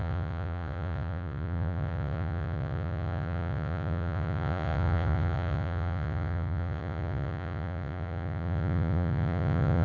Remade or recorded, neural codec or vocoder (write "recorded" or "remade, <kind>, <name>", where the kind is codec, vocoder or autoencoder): remade, vocoder, Vocos